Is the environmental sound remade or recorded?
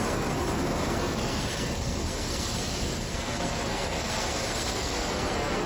remade